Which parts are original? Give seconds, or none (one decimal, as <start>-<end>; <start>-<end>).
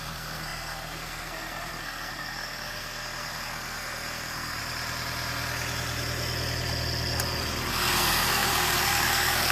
4.6-7.7